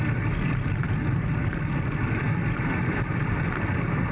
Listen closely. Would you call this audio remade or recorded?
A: recorded